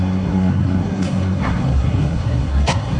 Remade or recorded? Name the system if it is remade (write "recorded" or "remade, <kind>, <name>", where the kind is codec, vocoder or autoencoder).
remade, codec, SNAC